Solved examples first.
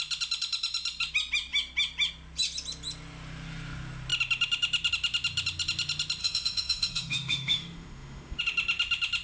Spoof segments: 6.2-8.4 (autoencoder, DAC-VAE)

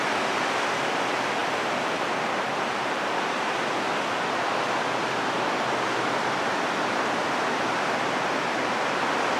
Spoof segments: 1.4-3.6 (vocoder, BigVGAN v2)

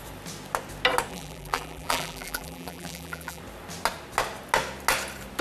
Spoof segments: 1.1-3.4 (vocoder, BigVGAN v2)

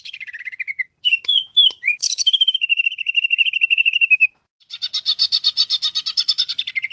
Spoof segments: 1.4-4.2 (autoencoder, DAC-VAE)

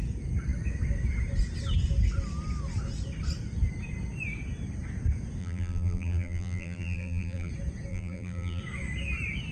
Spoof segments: 5.4-7.5 (vocoder, BigVGAN v2); 7.9-8.6

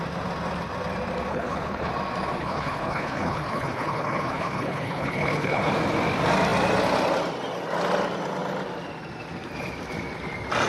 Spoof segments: 1.3-1.9 (codec, HILCodec); 2.4-5.7

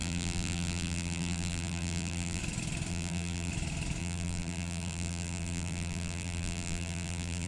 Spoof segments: 0.0-2.4 (vocoder, BigVGAN v2); 2.9-3.5; 4.0-7.5